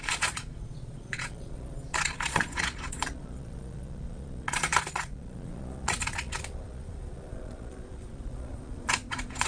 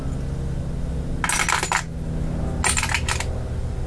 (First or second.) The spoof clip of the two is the first